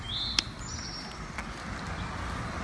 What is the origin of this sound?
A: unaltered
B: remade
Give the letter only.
A